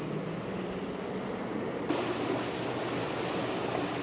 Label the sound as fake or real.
real